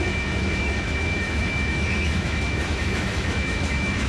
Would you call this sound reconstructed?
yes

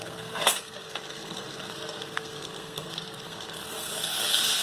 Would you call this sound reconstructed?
yes